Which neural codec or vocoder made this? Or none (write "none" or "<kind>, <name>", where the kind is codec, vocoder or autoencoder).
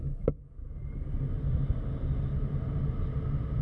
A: none